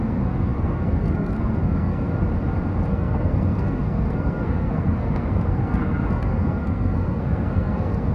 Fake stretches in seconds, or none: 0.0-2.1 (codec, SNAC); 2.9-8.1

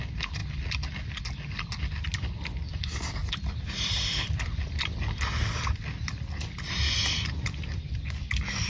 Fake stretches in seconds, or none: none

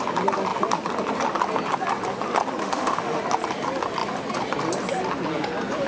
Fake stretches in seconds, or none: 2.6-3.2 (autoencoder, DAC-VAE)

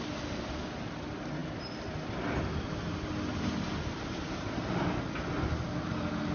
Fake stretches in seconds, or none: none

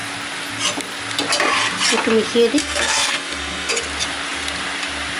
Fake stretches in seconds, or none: 2.6-3.7 (codec, SNAC)

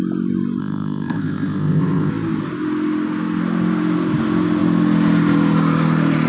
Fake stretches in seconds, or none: 0.6-2.1 (codec, ZipCodec)